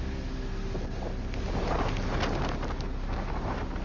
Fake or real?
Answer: real